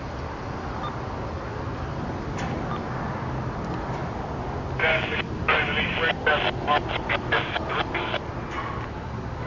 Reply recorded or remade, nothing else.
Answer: recorded